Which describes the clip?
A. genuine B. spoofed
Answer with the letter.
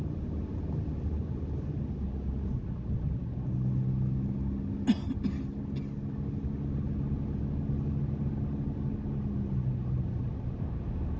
A